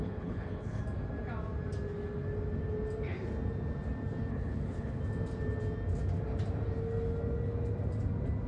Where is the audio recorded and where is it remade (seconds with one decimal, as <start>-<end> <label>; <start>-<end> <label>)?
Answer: 0.0-0.8 remade; 0.8-4.3 recorded; 4.3-5.0 remade; 5.0-8.5 recorded